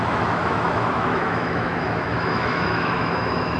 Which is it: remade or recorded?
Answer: remade